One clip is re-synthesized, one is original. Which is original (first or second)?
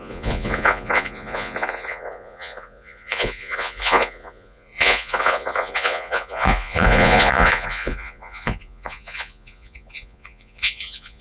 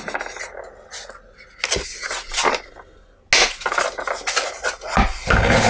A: second